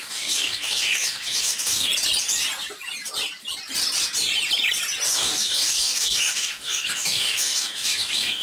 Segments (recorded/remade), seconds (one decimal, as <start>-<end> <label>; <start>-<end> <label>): 0.0-1.9 remade; 1.9-5.1 recorded; 5.1-8.4 remade